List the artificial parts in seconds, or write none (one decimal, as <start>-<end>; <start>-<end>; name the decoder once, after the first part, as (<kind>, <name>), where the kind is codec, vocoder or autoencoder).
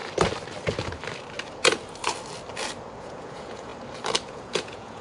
3.0-3.7 (vocoder, Vocos); 4.3-5.0